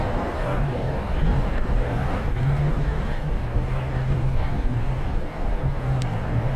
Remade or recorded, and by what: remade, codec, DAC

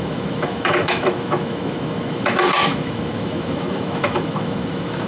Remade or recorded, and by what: remade, autoencoder, DAC-VAE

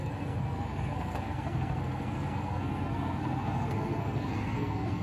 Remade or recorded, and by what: remade, codec, SNAC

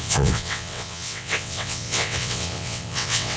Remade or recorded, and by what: remade, vocoder, WaveNeXt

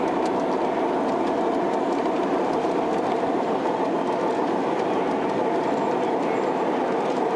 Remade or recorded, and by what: recorded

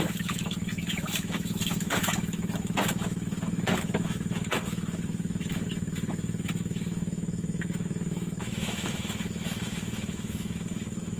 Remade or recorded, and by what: remade, autoencoder, DAC-VAE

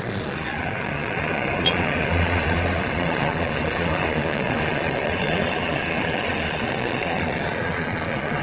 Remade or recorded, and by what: remade, vocoder, Vocos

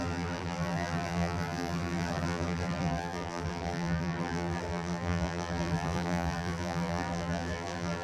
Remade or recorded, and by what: remade, vocoder, BigVGAN v2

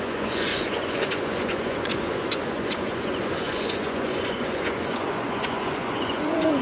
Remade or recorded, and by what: remade, vocoder, Vocos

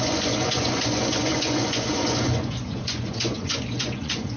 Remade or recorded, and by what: remade, vocoder, Vocos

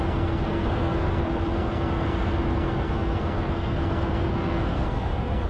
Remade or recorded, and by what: remade, codec, SNAC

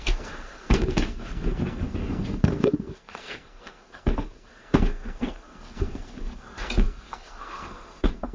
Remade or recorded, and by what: remade, codec, SNAC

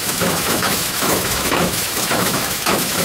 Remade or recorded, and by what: remade, autoencoder, DAC-VAE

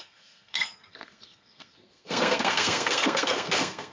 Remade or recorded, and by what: remade, codec, SNAC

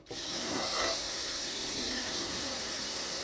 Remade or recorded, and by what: remade, codec, SNAC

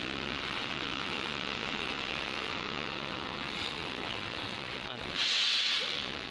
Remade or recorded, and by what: remade, vocoder, WaveNeXt